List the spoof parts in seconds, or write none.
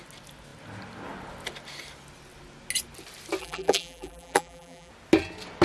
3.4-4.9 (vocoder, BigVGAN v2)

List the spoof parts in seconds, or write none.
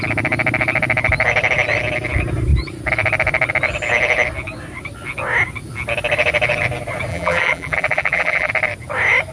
7.1-8.5 (vocoder, BigVGAN v2)